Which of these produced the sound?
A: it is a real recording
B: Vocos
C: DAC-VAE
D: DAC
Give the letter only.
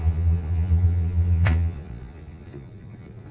B